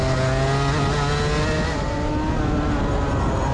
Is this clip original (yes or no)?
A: yes